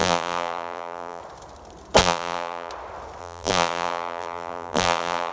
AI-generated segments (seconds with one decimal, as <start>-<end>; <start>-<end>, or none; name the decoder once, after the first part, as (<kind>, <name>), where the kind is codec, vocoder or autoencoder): 0.0-1.2 (vocoder, BigVGAN v2); 2.0-2.7; 3.2-5.3

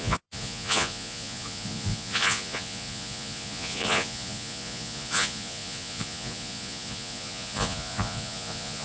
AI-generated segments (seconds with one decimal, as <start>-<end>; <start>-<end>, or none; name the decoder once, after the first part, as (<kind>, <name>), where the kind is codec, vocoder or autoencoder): 0.0-8.8 (vocoder, Vocos)

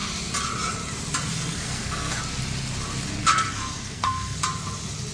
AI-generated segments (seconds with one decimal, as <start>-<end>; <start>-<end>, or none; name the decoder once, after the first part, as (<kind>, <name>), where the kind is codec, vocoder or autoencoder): 1.3-2.2 (codec, SNAC); 3.2-4.4

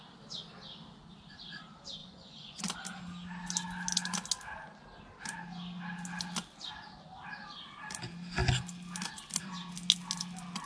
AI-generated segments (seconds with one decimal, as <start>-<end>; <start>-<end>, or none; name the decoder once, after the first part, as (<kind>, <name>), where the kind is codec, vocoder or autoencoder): 2.0-2.6 (vocoder, Vocos)

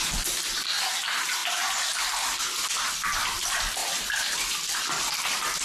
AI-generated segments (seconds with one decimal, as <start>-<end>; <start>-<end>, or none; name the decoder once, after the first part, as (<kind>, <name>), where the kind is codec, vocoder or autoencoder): none

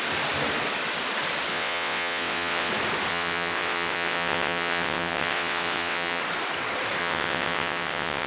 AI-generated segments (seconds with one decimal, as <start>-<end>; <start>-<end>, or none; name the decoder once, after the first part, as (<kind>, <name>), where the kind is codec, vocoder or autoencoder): 1.5-2.7 (vocoder, WaveNeXt); 3.1-6.2; 7.0-8.3

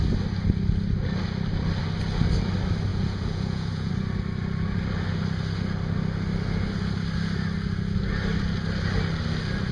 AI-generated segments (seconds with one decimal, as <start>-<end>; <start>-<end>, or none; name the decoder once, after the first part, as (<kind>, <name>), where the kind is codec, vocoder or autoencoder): 2.9-3.9 (vocoder, Vocos)

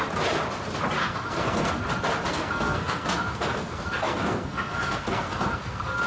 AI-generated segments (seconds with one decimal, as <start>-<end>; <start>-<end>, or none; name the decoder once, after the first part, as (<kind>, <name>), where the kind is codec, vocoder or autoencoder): 1.0-1.8 (codec, SNAC); 2.3-6.1